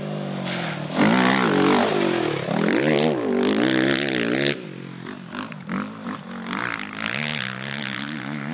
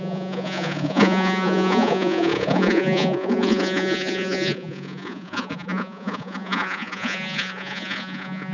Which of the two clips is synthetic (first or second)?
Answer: second